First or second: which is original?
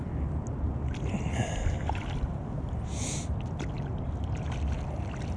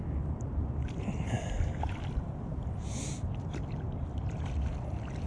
first